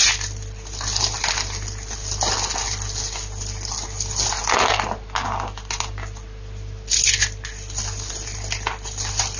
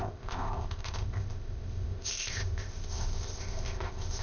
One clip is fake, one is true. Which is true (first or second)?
first